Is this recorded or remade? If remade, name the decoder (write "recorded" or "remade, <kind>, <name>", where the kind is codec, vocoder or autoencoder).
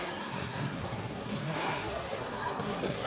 remade, codec, SNAC